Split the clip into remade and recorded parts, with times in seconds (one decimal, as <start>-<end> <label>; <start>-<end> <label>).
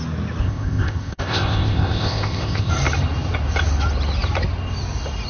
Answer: 0.0-0.4 recorded; 0.4-2.7 remade; 2.7-5.3 recorded